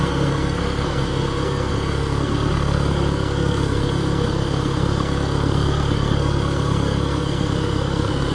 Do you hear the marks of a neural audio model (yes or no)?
yes